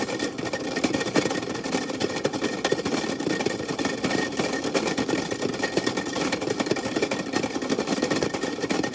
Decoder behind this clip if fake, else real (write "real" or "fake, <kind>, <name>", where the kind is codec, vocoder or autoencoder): fake, vocoder, BigVGAN v2